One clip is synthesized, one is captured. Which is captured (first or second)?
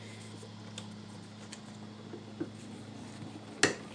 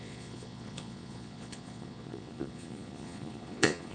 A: first